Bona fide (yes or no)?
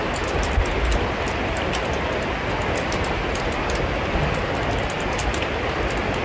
yes